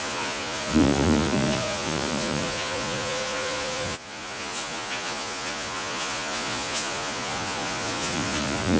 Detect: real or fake fake